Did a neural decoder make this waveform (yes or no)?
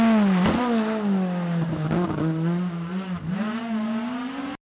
no